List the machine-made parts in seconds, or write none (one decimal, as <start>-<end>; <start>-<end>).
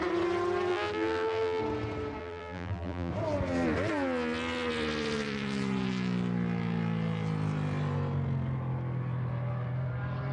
0.7-1.6; 2.2-3.1